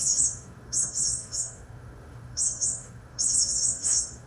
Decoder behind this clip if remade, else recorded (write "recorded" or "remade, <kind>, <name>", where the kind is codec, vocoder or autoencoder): remade, autoencoder, DAC-VAE